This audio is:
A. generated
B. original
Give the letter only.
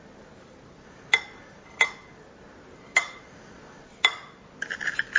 B